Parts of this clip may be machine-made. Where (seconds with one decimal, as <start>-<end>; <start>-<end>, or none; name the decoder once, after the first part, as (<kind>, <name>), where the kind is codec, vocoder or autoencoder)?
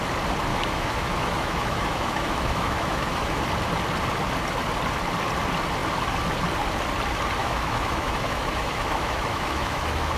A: 0.5-3.4 (autoencoder, DAC-VAE); 7.4-10.2